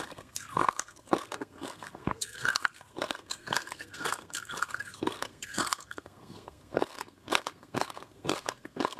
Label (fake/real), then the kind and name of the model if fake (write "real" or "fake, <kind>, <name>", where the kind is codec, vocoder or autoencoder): fake, codec, SNAC